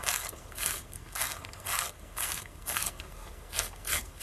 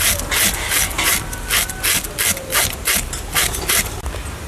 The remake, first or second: first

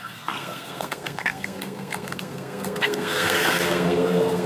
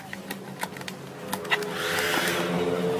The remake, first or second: first